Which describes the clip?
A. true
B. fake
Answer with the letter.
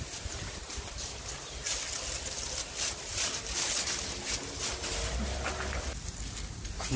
A